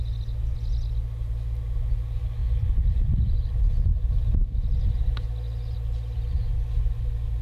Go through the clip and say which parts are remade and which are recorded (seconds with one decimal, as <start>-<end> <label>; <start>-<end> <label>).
0.0-7.4 recorded